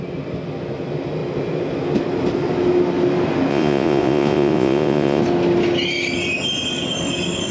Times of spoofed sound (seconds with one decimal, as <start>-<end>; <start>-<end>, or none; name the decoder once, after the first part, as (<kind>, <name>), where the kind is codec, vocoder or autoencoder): 3.5-5.2 (vocoder, Vocos)